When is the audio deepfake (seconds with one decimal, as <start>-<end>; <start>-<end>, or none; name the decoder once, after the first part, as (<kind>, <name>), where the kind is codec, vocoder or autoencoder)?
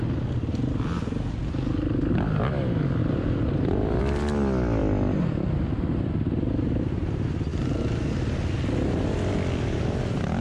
3.0-4.0 (vocoder, BigVGAN v2); 4.8-6.1